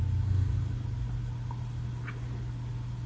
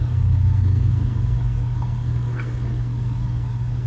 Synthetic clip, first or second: second